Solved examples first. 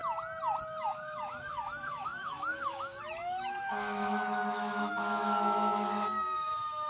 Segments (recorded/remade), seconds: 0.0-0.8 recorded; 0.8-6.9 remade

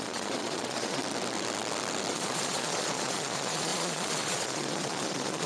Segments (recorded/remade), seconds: 0.0-1.0 remade; 1.0-2.1 recorded; 2.1-5.5 remade

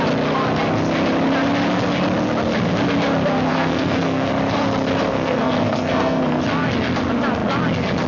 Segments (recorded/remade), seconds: 0.0-3.5 recorded; 3.5-4.3 remade; 4.3-5.1 recorded; 5.1-6.4 remade; 6.4-8.1 recorded

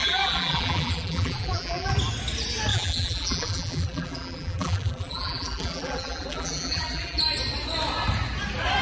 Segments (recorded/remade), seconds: 0.0-1.9 remade; 1.9-2.7 recorded; 2.7-7.2 remade; 7.2-8.8 recorded

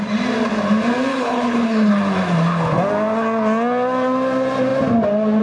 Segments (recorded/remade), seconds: 0.0-1.1 recorded; 1.1-2.0 remade; 2.0-5.4 recorded

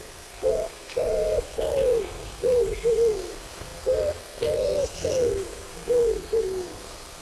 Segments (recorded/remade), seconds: 0.0-7.2 remade

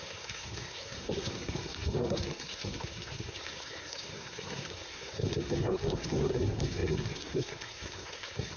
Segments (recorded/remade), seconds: 0.0-8.6 remade